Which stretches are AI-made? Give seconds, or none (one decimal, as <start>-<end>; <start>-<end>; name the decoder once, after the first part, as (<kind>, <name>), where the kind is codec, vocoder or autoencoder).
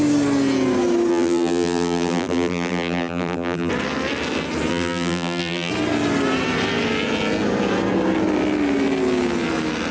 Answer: 1.1-3.7 (vocoder, BigVGAN v2); 4.7-5.7